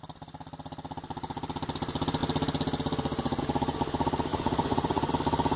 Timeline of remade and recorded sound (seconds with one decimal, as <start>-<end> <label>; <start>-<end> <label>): 0.0-4.3 recorded; 4.3-5.1 remade; 5.1-5.6 recorded